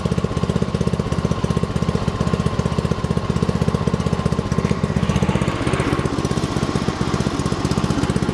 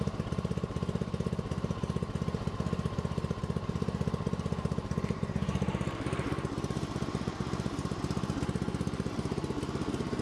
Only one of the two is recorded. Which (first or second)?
first